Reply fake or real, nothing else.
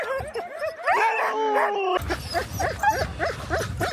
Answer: real